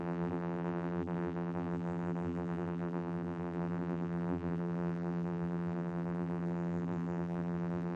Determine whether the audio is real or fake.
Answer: fake